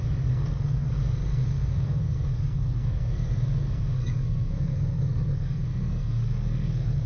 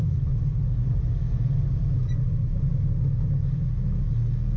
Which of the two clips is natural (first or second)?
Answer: second